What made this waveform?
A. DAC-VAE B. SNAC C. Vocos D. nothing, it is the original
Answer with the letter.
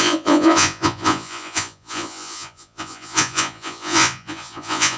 C